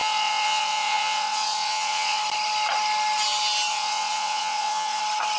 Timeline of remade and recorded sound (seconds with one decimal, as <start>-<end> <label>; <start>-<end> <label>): 0.0-2.2 remade; 2.2-3.7 recorded; 3.7-5.0 remade; 5.0-5.4 recorded